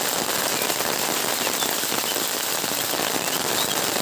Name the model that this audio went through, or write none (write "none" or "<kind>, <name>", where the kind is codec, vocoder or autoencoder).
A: none